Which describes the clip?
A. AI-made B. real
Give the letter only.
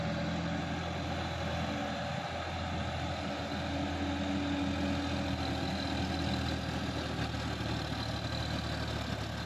B